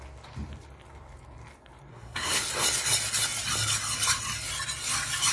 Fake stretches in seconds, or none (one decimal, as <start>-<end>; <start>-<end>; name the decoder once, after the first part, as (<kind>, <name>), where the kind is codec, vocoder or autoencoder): 1.9-2.4 (codec, SNAC)